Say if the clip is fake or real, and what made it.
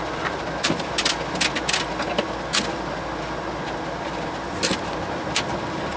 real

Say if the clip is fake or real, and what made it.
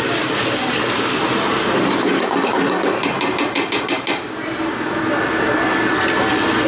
real